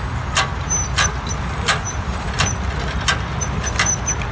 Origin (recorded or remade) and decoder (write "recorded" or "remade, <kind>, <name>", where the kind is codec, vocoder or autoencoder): recorded